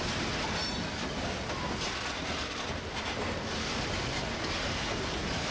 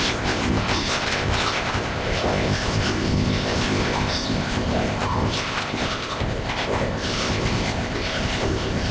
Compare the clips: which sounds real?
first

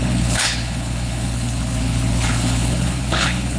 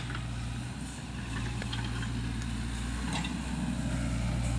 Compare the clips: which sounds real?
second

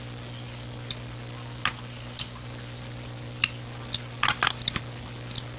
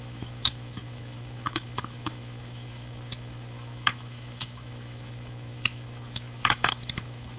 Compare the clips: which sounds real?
first